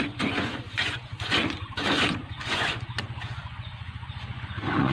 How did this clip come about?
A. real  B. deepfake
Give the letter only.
B